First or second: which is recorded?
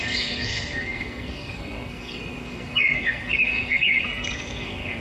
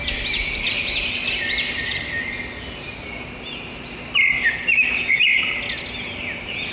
second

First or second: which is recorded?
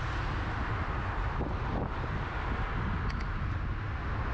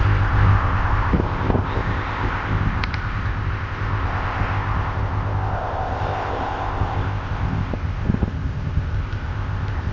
first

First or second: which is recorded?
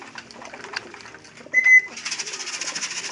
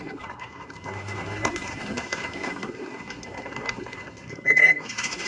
first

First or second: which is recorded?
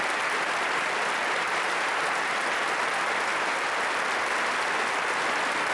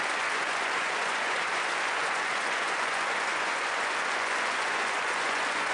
first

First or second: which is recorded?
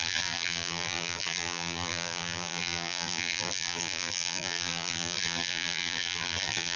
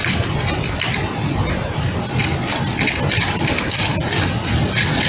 second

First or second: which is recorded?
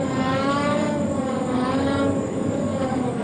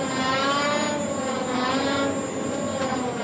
second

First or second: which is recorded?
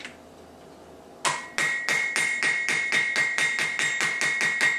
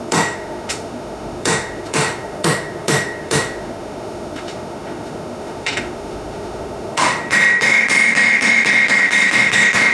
first